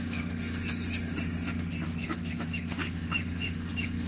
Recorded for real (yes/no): no